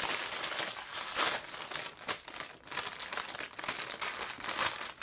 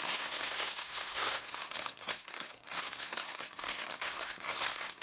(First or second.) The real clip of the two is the first